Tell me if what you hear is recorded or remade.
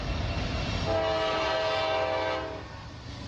recorded